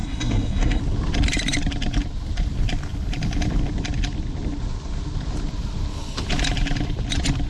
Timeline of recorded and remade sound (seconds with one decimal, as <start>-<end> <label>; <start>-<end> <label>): 0.0-0.8 remade; 0.8-7.5 recorded